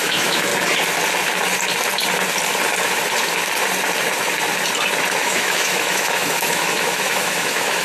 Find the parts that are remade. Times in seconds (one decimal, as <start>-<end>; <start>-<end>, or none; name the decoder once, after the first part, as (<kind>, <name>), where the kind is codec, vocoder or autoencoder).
0.0-0.5 (autoencoder, DAC-VAE); 5.2-7.8